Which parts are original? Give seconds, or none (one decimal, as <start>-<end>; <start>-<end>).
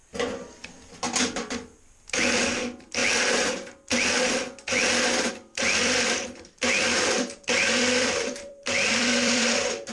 0.0-1.8; 3.0-5.3